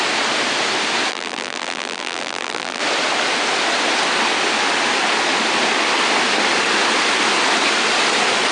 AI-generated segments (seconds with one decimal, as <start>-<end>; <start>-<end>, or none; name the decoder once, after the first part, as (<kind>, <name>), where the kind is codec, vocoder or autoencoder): 1.1-2.8 (vocoder, BigVGAN v2)